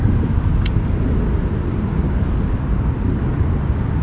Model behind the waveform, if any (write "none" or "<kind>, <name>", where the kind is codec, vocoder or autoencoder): none